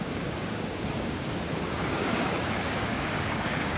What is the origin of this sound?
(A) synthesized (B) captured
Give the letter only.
A